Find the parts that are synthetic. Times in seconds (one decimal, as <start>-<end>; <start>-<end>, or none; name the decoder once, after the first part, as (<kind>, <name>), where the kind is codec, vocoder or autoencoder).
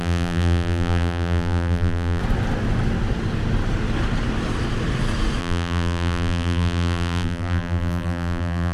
0.0-2.2 (vocoder, BigVGAN v2); 5.4-8.7